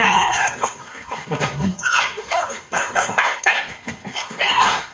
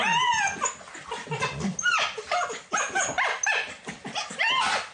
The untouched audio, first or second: second